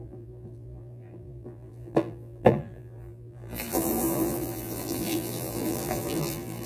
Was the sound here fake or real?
fake